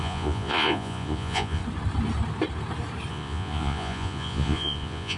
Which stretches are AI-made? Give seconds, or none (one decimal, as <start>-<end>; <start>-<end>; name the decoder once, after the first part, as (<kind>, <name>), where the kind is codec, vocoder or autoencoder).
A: 0.0-1.6 (vocoder, Vocos); 3.1-5.2